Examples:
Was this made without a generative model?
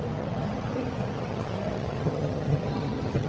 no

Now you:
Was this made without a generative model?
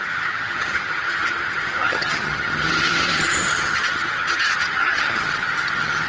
no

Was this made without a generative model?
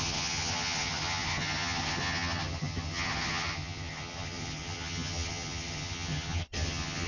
no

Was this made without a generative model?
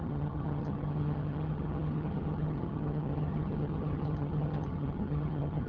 no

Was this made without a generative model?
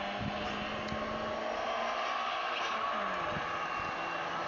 yes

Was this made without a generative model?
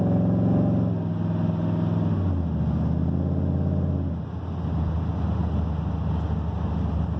yes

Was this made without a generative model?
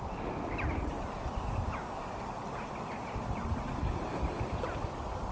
yes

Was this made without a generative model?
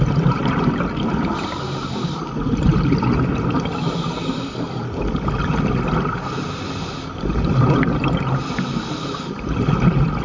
yes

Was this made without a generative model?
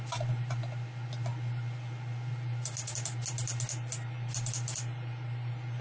yes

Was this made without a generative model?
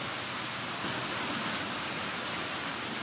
yes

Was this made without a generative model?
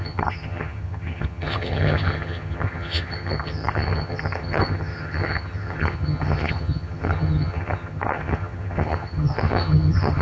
no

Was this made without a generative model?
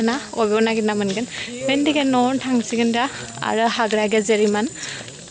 yes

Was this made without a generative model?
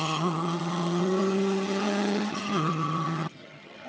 no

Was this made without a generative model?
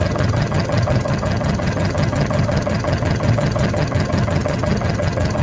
no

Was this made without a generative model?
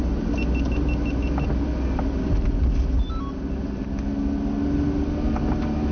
yes